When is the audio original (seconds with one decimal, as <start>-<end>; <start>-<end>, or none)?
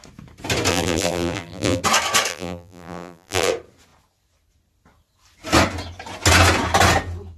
0.0-0.7; 1.8-2.3; 3.5-7.4